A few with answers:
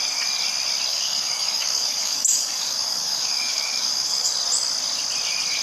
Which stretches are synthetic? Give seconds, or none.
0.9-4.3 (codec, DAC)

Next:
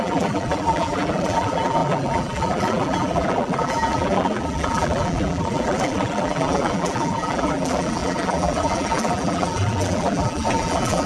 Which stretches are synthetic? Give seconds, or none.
0.0-11.1 (vocoder, BigVGAN v2)

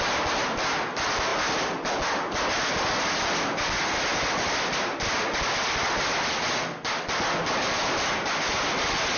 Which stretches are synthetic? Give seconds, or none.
none

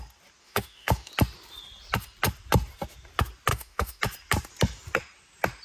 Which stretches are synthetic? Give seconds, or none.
0.4-1.1 (autoencoder, DAC-VAE); 3.5-4.0

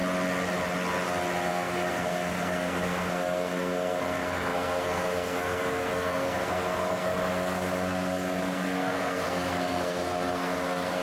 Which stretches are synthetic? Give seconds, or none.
1.5-11.0 (codec, SNAC)

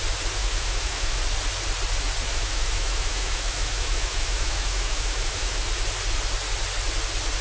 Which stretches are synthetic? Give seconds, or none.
0.4-1.2 (autoencoder, DAC-VAE); 2.3-5.7